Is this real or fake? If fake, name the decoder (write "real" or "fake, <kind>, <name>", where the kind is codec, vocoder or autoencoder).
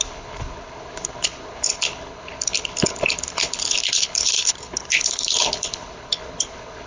fake, codec, HILCodec